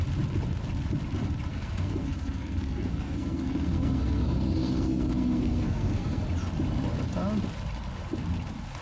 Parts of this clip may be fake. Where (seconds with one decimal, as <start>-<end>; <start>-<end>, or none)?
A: 1.5-6.2